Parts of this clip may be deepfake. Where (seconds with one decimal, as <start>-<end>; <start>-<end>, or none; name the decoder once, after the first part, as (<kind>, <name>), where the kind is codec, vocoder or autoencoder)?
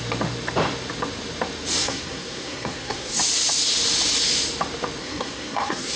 1.8-3.2 (codec, SNAC); 5.0-6.0